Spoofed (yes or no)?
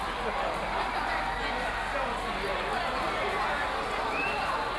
no